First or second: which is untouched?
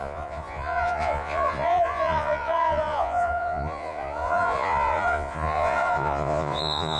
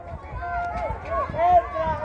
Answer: second